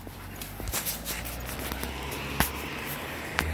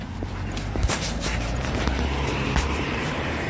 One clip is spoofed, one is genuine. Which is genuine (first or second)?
first